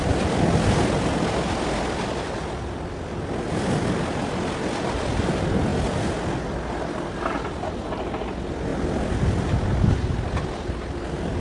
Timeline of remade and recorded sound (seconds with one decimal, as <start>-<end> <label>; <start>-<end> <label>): 0.0-11.4 recorded